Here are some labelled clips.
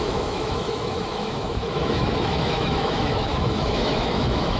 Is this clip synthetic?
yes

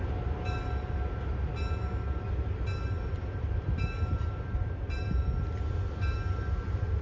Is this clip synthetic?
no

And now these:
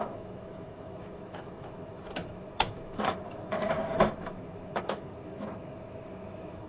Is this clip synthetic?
yes